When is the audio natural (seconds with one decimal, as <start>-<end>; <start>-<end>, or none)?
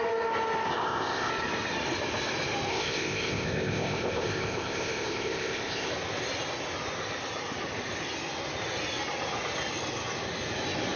0.0-0.7; 1.3-2.7; 5.9-11.0